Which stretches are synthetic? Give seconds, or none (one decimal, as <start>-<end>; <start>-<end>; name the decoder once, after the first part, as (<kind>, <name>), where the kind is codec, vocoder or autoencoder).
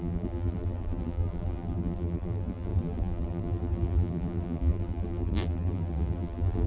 0.0-6.7 (vocoder, BigVGAN v2)